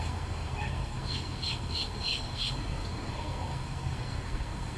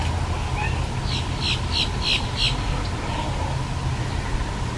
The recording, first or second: second